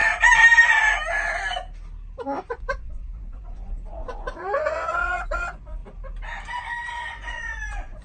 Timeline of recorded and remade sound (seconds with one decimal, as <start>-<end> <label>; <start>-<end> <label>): 0.0-2.5 recorded; 2.5-5.8 remade; 5.8-6.9 recorded; 6.9-8.0 remade